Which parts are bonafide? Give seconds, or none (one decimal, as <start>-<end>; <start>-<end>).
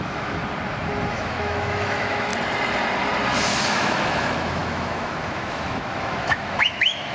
0.4-1.1; 2.3-3.7